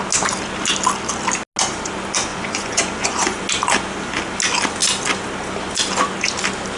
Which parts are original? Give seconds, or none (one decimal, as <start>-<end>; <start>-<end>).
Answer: 0.0-2.3; 3.4-6.8